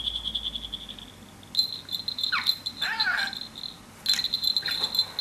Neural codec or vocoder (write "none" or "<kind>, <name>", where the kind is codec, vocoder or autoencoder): none